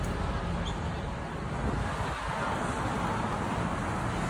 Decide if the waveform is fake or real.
real